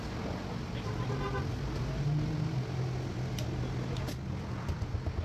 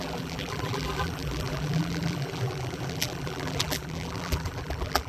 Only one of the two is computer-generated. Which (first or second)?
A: second